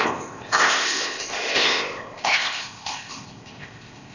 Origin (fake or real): fake